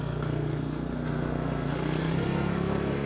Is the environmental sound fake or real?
fake